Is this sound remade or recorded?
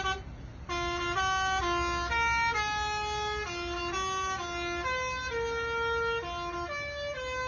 recorded